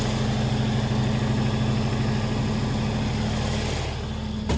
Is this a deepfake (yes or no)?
no